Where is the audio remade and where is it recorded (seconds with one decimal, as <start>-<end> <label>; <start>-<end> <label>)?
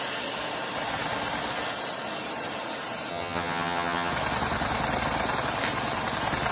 0.0-3.1 recorded; 3.1-4.1 remade; 4.1-6.5 recorded